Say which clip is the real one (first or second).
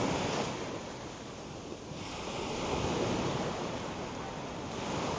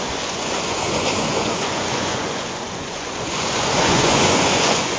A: first